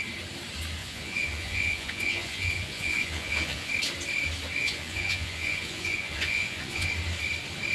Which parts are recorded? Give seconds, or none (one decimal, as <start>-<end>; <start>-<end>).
0.0-0.8; 3.7-4.6; 6.9-7.7